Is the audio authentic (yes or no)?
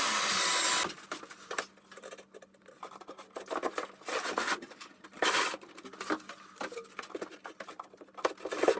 yes